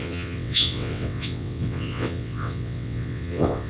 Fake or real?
fake